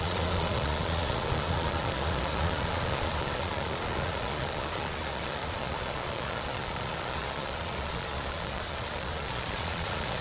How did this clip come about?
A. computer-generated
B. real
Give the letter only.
A